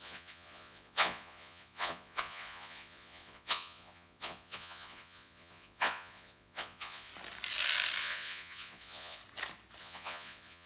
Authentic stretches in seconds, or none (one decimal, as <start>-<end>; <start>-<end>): 7.1-8.0; 9.2-9.8